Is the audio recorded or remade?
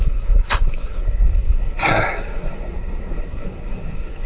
remade